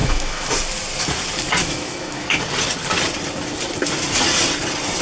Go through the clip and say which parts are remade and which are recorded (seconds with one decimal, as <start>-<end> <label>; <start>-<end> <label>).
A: 0.0-0.5 remade; 0.5-1.6 recorded; 1.6-2.4 remade; 2.4-5.0 recorded